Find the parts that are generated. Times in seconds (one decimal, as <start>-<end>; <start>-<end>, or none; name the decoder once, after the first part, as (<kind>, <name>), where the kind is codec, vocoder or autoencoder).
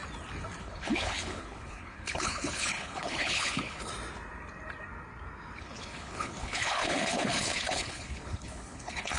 0.6-3.9 (codec, HILCodec); 5.6-9.2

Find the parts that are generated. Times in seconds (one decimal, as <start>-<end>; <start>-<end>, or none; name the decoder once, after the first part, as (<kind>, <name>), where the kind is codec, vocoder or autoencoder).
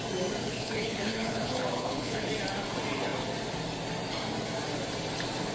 0.4-2.3 (codec, HILCodec)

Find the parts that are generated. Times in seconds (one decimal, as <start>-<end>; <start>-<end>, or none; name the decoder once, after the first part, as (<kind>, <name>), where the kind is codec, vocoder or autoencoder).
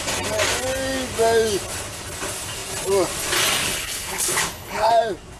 3.6-4.9 (codec, HILCodec)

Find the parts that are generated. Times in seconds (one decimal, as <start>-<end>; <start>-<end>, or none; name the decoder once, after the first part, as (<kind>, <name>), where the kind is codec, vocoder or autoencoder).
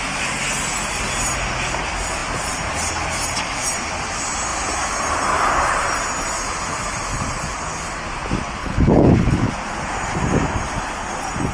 8.6-9.5 (codec, HILCodec)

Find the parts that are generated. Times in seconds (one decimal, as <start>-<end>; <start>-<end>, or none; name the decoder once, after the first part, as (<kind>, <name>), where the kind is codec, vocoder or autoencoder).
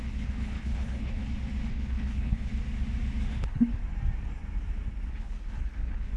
0.0-1.2 (codec, HILCodec); 1.7-2.5; 3.3-3.8; 5.1-6.2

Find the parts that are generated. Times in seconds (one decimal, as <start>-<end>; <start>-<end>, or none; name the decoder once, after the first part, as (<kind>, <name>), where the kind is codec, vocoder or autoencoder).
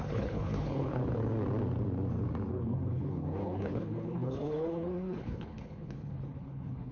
0.0-1.0 (codec, HILCodec); 2.5-6.9